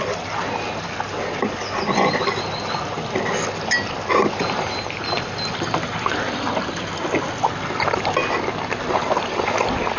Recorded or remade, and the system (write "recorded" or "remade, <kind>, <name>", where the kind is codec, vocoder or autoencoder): recorded